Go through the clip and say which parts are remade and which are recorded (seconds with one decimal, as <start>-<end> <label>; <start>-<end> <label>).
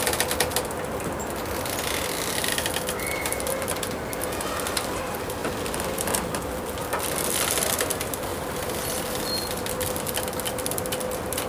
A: 0.0-11.5 recorded